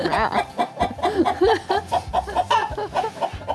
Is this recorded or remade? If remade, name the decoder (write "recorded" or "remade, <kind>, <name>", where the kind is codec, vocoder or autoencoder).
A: recorded